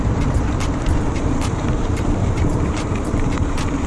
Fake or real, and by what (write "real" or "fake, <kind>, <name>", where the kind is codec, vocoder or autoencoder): fake, vocoder, BigVGAN v2